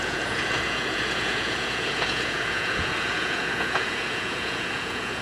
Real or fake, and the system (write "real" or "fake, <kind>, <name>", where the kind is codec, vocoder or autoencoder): fake, vocoder, Vocos